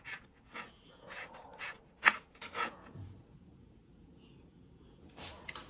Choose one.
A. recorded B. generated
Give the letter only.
B